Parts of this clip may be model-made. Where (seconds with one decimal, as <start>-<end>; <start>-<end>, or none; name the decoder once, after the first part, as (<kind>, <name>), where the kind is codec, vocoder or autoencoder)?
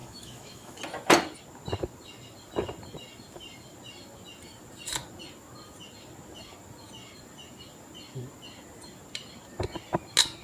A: 0.0-0.8 (autoencoder, DAC-VAE)